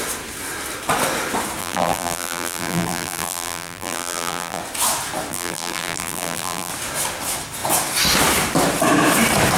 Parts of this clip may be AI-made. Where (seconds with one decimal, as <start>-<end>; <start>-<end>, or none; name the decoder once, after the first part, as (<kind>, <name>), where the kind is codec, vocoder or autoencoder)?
1.6-4.6 (vocoder, BigVGAN v2); 5.3-6.7